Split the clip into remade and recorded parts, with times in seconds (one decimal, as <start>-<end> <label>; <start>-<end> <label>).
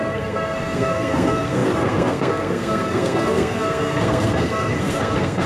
0.0-5.5 remade